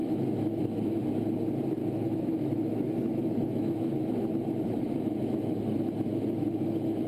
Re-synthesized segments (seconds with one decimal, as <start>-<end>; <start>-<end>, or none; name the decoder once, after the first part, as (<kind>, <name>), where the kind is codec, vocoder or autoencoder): 0.0-0.6 (autoencoder, DAC-VAE); 1.8-5.6; 6.1-7.1